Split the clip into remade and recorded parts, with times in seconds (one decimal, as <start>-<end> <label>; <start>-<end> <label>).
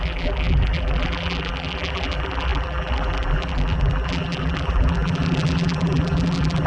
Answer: 0.0-6.7 remade